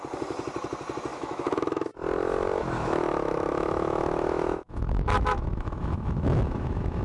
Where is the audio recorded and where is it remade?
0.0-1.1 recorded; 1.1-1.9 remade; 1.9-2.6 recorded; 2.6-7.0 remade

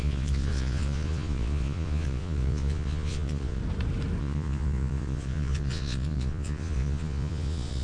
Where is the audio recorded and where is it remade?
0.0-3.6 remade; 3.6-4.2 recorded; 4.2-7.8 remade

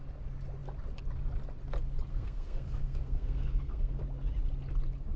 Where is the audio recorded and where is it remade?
0.0-2.1 recorded; 2.1-4.0 remade; 4.0-5.2 recorded

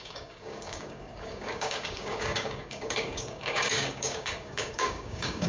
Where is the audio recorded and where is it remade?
0.0-5.5 remade